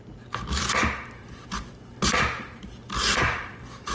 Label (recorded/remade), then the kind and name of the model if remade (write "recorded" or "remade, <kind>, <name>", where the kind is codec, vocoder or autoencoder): remade, vocoder, BigVGAN v2